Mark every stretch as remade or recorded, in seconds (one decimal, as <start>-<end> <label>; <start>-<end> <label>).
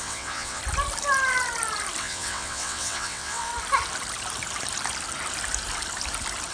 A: 0.0-0.6 remade; 0.6-2.0 recorded; 2.0-3.5 remade; 3.5-6.5 recorded